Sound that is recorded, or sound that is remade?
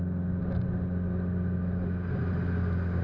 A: recorded